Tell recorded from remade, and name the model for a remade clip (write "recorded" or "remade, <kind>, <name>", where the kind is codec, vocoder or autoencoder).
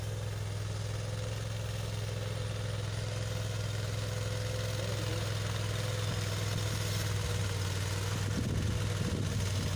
recorded